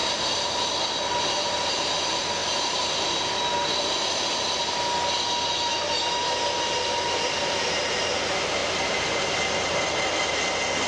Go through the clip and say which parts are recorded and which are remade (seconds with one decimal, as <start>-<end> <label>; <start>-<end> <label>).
0.0-5.7 recorded; 5.7-6.4 remade; 6.4-10.9 recorded